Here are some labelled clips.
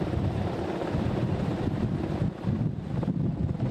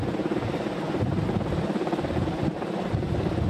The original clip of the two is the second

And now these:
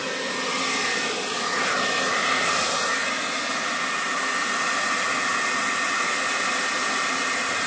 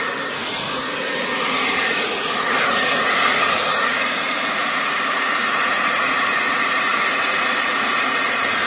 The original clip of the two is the first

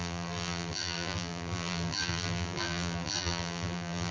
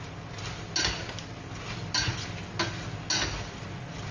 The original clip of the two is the second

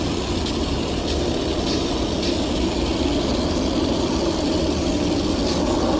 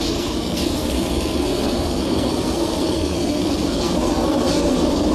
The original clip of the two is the first